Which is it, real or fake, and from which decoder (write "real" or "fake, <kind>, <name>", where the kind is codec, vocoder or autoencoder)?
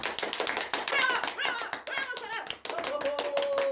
real